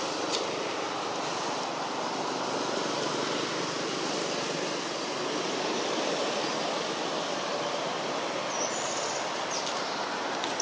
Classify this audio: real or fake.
real